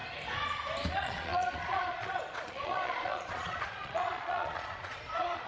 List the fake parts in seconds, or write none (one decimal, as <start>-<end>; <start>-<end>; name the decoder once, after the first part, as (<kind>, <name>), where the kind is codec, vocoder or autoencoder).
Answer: 0.9-5.5 (vocoder, Vocos)